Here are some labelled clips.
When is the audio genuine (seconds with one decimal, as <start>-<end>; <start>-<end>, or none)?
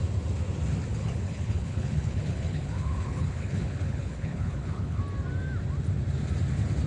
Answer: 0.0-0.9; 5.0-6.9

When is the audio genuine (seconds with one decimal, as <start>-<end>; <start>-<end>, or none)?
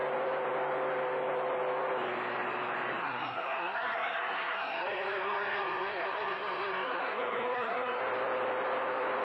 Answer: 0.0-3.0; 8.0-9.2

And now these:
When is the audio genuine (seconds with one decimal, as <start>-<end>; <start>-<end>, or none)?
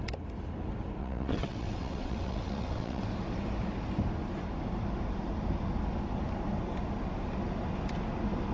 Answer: 0.0-1.0; 3.0-8.5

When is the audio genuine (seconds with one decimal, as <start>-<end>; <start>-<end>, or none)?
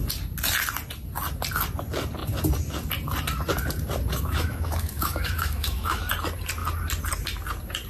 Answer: 0.0-4.1; 6.1-7.9